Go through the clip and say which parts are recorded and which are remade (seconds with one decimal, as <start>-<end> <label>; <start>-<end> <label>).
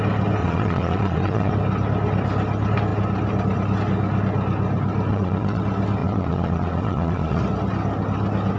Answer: 0.0-0.4 recorded; 0.4-1.5 remade; 1.5-5.1 recorded; 5.1-5.6 remade; 5.6-6.0 recorded; 6.0-7.4 remade; 7.4-8.6 recorded